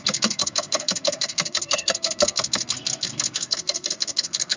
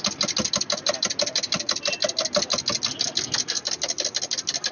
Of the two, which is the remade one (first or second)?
first